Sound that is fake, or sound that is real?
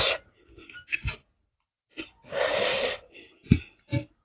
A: real